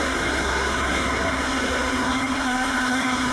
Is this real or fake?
fake